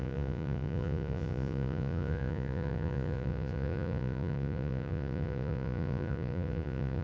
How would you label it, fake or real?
fake